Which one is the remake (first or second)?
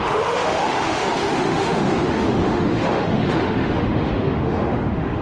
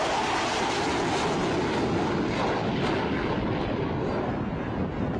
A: first